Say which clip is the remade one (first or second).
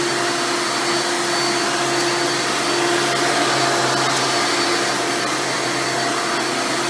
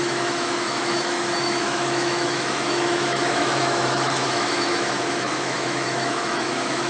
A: second